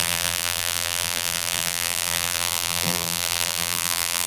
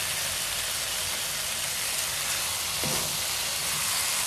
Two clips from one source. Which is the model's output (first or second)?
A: first